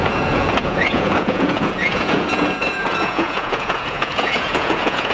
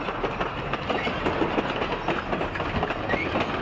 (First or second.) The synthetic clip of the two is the first